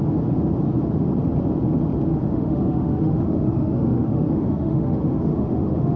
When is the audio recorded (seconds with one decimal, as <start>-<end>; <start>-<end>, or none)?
0.0-2.1